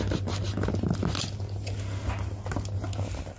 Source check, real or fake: real